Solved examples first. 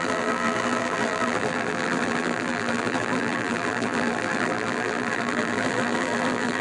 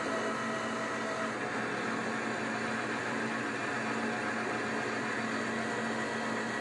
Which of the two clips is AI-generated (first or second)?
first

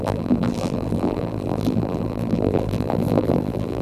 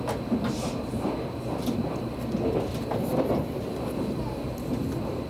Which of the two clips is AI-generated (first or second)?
first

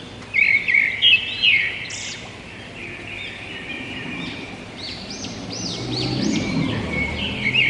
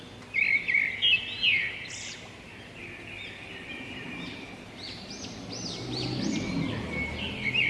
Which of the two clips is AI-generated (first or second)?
first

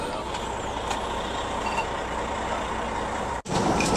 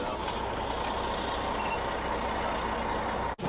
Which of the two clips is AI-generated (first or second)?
first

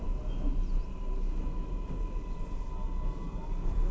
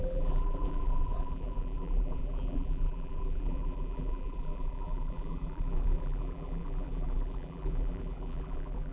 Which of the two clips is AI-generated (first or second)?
second